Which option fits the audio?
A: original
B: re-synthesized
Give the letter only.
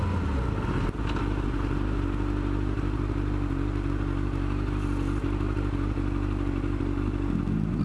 A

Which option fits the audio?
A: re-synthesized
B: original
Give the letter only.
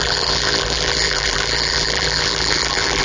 A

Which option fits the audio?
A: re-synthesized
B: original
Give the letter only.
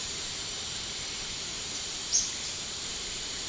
A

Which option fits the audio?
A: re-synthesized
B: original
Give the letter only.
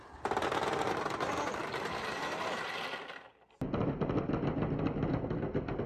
B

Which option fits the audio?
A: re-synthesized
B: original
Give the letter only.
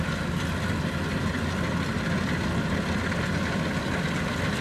B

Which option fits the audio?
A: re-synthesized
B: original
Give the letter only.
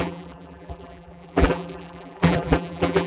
A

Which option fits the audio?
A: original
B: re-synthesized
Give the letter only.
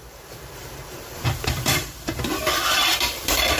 B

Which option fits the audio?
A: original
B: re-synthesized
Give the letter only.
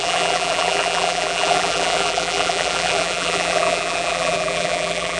B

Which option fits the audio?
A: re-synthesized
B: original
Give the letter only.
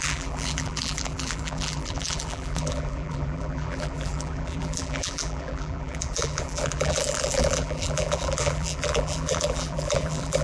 A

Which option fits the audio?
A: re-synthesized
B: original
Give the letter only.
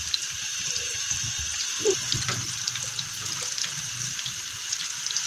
A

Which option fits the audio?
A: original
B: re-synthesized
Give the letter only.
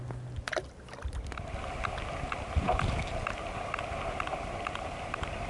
A